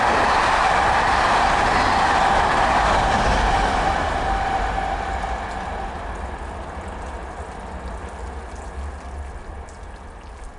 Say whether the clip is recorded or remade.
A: recorded